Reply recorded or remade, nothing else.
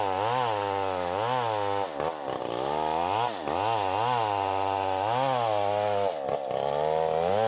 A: recorded